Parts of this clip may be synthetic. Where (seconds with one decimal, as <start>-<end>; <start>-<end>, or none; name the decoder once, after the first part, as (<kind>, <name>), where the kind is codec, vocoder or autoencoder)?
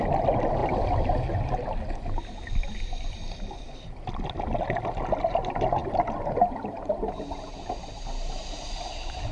5.8-7.1 (vocoder, BigVGAN v2)